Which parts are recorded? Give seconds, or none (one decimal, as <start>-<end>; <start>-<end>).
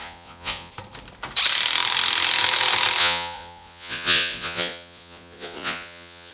0.7-3.0